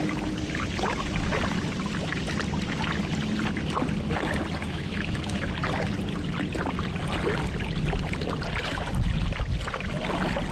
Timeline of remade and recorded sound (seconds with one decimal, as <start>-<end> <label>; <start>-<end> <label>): 0.0-4.6 recorded; 4.6-5.5 remade; 5.5-10.5 recorded